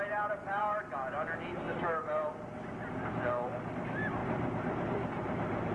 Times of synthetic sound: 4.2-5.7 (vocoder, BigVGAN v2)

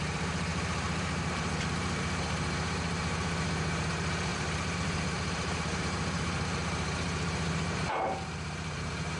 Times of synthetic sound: 0.0-9.2 (vocoder, BigVGAN v2)

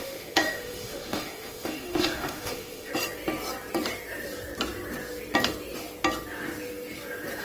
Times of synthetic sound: 0.0-2.9 (autoencoder, DAC-VAE)

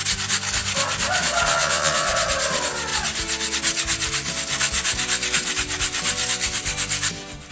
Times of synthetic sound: 1.5-2.1 (vocoder, Vocos)